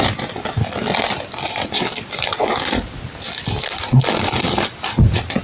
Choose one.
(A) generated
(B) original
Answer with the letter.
B